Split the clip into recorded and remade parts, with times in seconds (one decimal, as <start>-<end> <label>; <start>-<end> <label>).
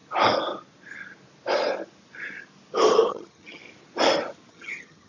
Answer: 0.0-3.1 recorded; 3.1-3.6 remade; 3.6-4.5 recorded; 4.5-5.1 remade